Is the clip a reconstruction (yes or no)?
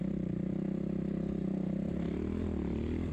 no